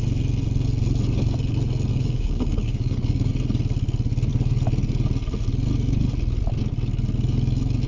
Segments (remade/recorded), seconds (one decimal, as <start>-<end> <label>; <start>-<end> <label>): 0.0-1.9 recorded; 1.9-3.3 remade; 3.3-7.9 recorded